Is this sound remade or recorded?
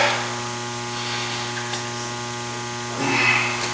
recorded